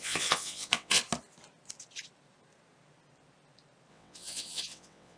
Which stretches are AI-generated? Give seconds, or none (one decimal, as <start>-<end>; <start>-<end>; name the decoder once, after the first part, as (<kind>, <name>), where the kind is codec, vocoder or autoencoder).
0.0-1.0 (vocoder, WaveNeXt); 3.9-5.2